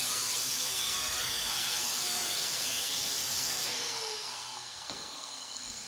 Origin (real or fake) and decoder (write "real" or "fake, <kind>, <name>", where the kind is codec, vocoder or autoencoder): fake, codec, SNAC